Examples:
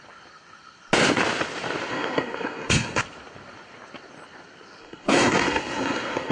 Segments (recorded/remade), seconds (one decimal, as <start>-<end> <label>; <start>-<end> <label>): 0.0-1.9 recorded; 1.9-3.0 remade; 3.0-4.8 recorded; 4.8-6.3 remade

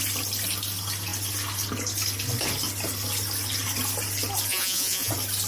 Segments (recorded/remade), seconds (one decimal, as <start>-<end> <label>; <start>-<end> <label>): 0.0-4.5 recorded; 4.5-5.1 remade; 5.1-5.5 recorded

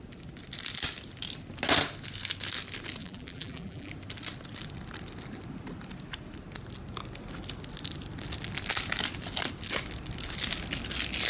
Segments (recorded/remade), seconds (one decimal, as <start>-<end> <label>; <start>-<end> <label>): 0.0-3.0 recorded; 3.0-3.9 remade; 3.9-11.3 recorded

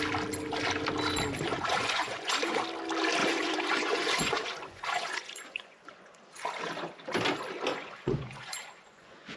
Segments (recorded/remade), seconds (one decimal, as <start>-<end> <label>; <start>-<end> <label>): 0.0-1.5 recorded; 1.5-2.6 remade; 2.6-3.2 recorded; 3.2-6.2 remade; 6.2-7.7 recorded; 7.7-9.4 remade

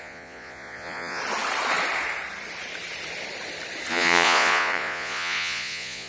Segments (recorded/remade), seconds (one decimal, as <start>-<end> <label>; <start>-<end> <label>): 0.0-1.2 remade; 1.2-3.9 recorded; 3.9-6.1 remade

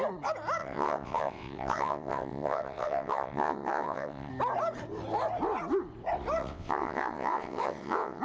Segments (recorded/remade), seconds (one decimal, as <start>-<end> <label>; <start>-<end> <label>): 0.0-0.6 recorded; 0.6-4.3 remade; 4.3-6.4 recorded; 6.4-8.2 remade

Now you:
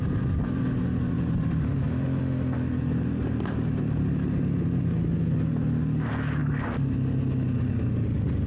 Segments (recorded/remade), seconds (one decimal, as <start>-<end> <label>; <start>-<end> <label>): 0.0-8.5 recorded